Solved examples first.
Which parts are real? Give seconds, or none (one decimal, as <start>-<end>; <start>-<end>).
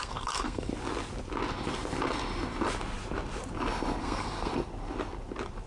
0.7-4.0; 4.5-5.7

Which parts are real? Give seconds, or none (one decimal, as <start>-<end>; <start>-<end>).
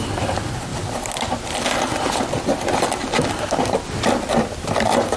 0.0-5.2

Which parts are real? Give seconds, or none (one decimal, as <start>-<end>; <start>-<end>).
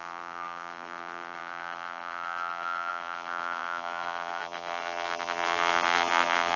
none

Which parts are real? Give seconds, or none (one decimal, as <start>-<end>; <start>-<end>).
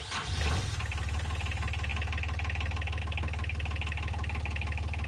0.0-5.1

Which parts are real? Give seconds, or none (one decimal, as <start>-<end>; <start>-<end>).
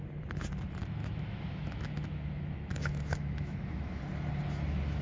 0.0-1.0; 4.0-5.0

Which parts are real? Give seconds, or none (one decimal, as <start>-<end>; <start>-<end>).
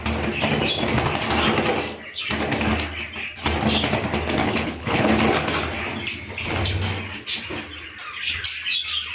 0.0-4.4; 5.1-9.1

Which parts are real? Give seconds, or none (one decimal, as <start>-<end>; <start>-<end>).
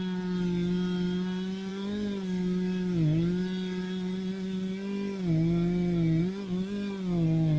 0.0-7.6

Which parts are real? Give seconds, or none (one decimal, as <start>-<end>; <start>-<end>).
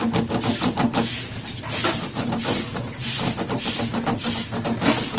0.0-5.2